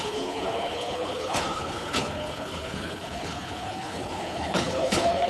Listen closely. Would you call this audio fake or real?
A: fake